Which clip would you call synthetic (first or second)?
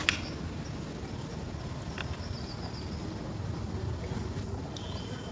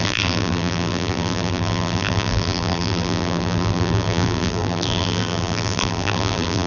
second